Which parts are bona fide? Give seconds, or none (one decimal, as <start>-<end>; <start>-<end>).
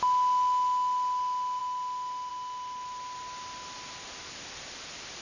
0.0-5.2